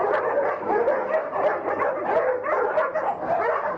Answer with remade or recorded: recorded